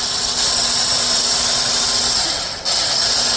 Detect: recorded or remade recorded